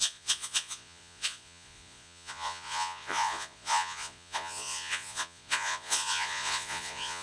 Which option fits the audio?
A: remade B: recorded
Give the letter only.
A